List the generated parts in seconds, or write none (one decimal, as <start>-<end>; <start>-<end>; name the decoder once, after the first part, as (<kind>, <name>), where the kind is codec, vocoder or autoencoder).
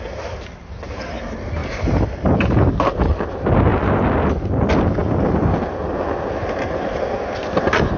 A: 1.6-2.7 (vocoder, BigVGAN v2)